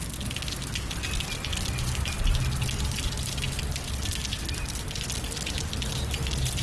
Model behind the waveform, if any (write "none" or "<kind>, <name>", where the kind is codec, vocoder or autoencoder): none